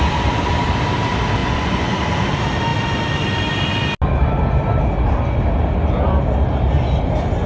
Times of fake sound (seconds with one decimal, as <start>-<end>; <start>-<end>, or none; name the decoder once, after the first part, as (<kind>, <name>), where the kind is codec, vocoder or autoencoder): 1.4-1.9 (vocoder, Vocos)